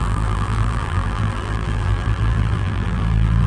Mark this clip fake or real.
fake